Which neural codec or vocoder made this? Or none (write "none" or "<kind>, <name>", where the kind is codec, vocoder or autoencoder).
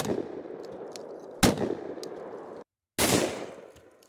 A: none